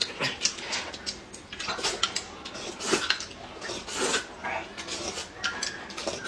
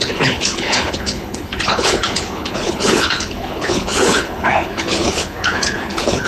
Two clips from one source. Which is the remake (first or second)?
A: second